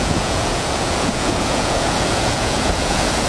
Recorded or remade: remade